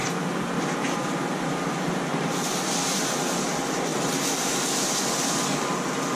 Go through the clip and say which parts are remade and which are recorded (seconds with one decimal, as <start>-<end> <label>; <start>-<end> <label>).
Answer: 0.0-2.5 remade; 2.5-6.2 recorded